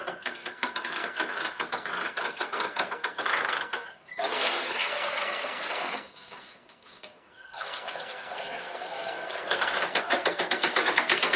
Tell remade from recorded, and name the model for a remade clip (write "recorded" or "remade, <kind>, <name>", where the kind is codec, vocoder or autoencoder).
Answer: remade, codec, SNAC